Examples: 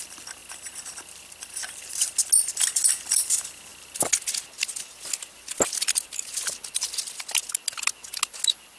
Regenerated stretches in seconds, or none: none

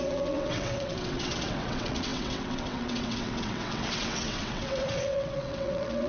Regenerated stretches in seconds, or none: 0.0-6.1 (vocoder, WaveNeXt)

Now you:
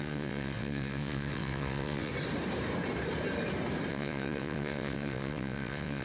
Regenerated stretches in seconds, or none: 0.0-2.1 (vocoder, WaveNeXt); 3.9-6.0

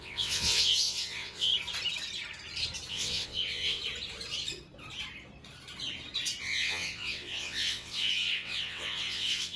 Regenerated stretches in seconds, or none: 0.0-1.5 (vocoder, WaveNeXt); 2.9-3.8; 6.4-9.6

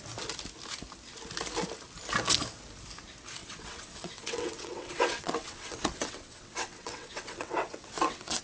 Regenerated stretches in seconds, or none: 3.4-8.4 (vocoder, WaveNeXt)